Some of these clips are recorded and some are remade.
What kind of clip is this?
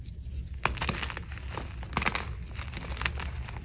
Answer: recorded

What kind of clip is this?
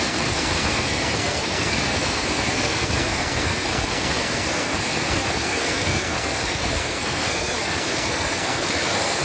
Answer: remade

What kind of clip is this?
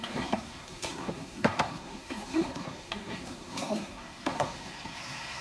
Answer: remade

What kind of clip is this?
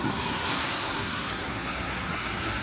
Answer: remade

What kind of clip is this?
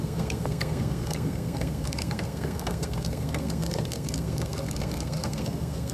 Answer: remade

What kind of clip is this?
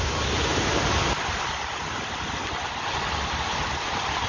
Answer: recorded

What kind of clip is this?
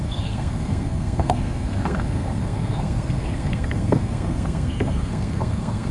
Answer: remade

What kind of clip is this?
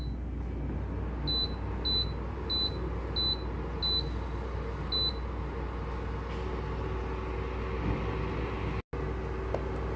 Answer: recorded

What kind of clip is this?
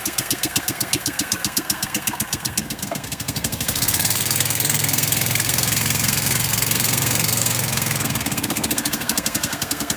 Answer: remade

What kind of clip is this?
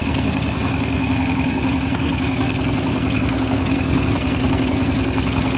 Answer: remade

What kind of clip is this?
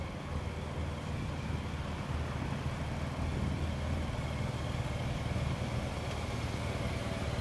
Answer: recorded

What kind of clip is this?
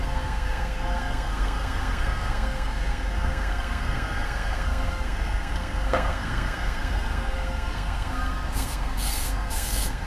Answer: remade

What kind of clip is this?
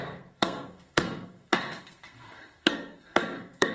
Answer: remade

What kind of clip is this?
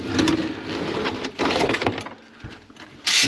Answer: recorded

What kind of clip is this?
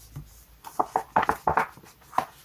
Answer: recorded